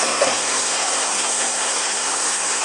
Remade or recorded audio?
remade